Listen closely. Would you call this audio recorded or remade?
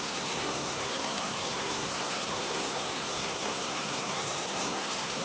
remade